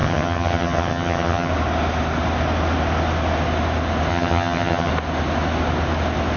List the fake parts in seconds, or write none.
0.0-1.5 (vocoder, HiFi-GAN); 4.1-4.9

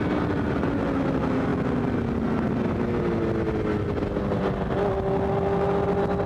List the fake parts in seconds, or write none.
none